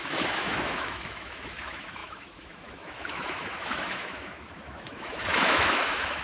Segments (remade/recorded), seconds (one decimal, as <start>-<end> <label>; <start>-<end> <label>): 0.0-6.2 remade